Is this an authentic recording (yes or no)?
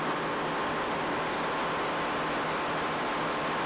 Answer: yes